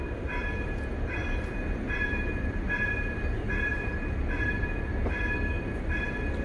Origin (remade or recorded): recorded